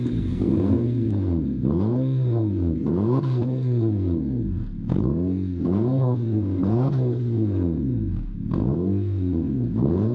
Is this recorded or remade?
remade